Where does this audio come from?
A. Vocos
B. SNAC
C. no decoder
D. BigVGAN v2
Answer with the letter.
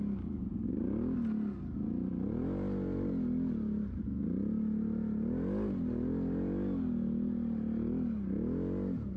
C